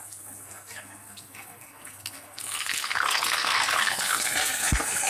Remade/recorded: remade